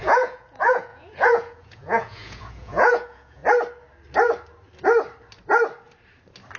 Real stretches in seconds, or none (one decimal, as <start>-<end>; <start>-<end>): 3.4-6.6